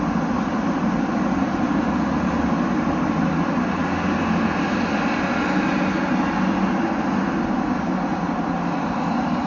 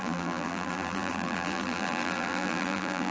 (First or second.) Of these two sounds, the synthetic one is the second